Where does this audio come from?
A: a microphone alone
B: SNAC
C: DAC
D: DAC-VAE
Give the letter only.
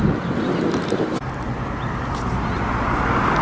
A